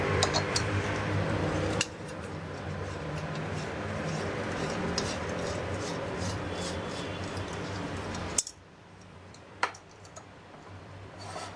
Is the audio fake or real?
fake